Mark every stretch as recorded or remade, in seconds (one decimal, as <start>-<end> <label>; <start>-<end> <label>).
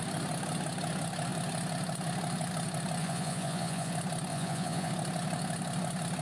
0.0-3.0 recorded; 3.0-3.9 remade; 3.9-4.3 recorded; 4.3-4.9 remade; 4.9-6.2 recorded